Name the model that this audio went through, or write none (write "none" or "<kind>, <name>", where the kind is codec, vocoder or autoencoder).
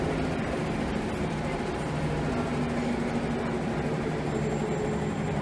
none